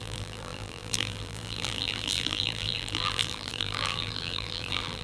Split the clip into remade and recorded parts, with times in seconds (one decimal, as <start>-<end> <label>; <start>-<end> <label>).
0.0-5.0 remade